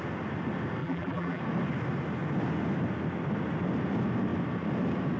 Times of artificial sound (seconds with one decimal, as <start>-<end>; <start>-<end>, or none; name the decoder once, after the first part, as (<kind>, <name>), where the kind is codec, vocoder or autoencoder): 0.8-1.4 (vocoder, BigVGAN v2)